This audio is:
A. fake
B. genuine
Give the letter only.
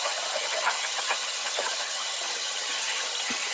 A